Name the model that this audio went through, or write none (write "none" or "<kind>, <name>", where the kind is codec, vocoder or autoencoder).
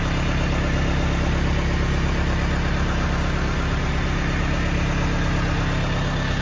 none